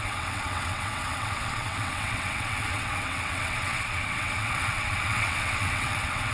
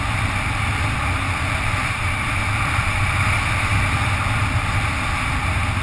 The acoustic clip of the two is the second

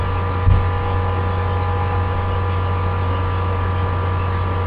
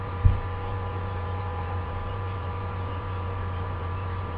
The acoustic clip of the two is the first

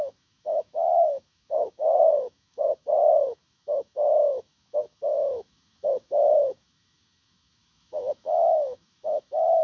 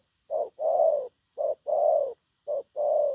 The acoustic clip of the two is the second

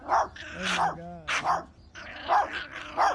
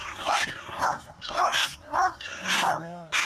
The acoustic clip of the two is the first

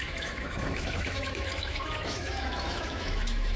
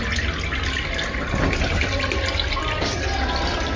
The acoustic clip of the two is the second